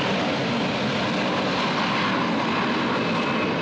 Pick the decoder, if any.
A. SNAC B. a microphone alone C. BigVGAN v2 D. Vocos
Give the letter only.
B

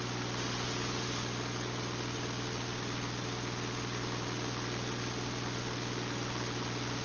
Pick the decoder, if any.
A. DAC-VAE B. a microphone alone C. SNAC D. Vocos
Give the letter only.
B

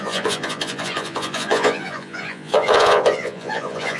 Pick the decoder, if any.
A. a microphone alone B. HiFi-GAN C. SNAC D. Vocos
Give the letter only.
D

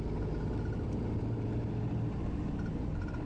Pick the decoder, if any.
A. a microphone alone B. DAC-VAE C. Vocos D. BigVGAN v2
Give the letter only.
A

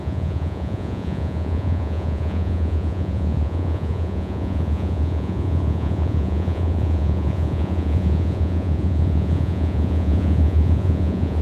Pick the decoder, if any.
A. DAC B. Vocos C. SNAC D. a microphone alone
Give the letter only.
B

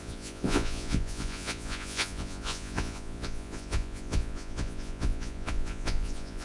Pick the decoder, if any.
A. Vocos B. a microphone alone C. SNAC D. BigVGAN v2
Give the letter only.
A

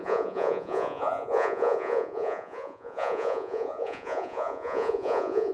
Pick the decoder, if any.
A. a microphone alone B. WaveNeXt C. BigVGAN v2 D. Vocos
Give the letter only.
D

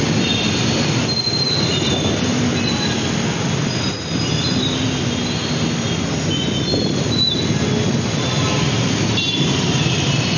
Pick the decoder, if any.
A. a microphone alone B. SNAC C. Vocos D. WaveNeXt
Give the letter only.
A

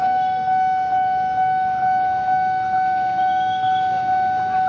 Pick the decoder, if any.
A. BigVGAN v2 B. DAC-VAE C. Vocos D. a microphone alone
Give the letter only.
D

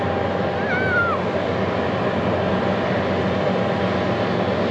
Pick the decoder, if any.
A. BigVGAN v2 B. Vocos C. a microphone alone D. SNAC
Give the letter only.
C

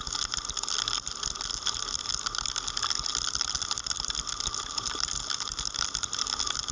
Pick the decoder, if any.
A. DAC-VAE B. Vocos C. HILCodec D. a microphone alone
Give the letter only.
D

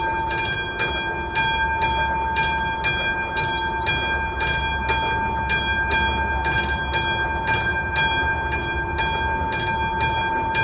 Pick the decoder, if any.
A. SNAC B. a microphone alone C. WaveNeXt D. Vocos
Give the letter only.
B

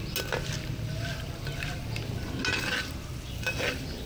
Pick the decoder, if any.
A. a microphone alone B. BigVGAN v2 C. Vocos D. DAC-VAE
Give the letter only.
A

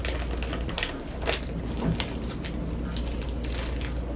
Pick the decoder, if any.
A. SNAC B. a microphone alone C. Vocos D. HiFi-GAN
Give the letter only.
B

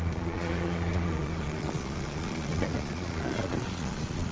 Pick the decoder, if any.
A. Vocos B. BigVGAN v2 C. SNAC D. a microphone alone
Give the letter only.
A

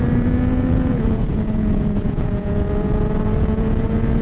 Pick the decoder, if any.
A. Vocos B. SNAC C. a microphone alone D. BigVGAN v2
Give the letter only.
A